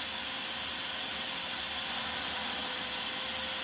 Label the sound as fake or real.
real